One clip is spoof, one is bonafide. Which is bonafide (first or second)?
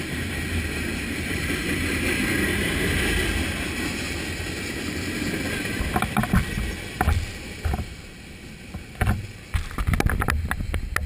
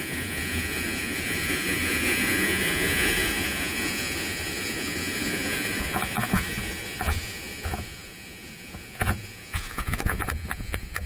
first